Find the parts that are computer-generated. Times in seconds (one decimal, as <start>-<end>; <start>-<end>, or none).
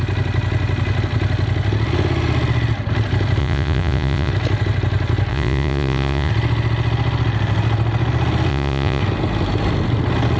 3.4-4.3; 5.3-6.3; 8.5-9.0